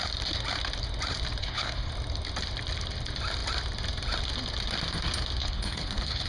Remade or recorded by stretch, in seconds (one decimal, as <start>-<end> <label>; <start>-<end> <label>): 0.0-1.4 recorded; 1.4-1.9 remade; 1.9-5.4 recorded; 5.4-6.3 remade